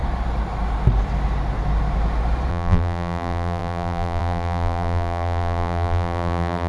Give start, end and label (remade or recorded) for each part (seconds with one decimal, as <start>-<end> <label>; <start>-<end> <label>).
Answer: 0.0-2.5 recorded; 2.5-6.7 remade